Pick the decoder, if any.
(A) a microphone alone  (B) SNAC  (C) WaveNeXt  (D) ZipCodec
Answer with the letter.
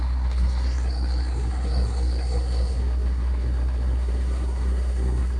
B